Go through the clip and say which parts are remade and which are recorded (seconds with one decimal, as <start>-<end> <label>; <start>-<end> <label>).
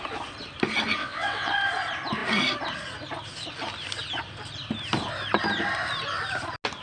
0.0-1.0 recorded; 1.0-1.5 remade; 1.5-6.8 recorded